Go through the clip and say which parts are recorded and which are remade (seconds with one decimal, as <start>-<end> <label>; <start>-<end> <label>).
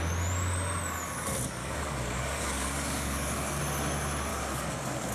0.0-1.6 recorded; 1.6-3.6 remade; 3.6-4.3 recorded; 4.3-5.1 remade